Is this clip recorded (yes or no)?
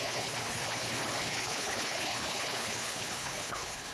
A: no